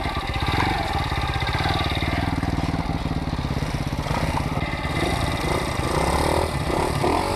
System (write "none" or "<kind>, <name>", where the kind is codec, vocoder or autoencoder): none